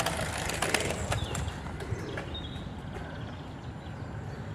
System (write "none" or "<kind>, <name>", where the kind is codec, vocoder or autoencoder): none